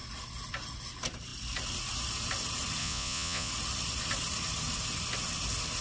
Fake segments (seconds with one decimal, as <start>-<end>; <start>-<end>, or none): 2.8-3.5